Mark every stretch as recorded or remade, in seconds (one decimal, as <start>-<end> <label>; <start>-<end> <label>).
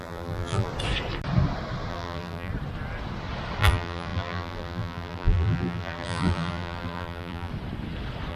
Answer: 0.0-0.7 remade; 0.7-1.9 recorded; 1.9-2.5 remade; 2.5-3.6 recorded; 3.6-7.5 remade; 7.5-8.3 recorded